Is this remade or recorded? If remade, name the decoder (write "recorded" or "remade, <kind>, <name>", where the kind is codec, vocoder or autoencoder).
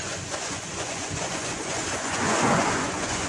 remade, vocoder, Vocos